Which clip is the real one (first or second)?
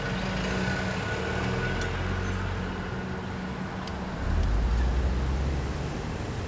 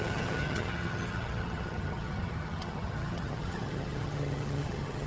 first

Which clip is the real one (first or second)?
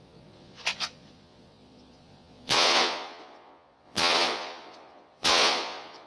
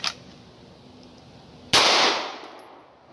second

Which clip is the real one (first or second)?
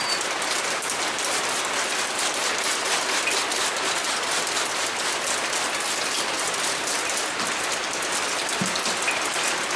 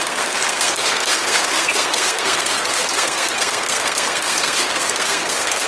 first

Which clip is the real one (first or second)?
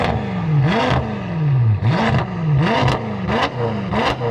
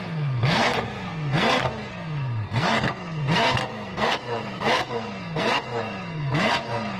first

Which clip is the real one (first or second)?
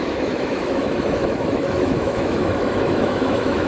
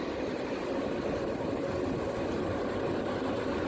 second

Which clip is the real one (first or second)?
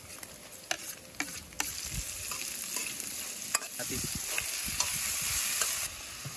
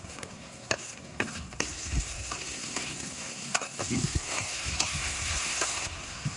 first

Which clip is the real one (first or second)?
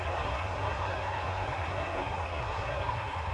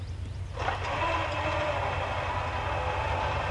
second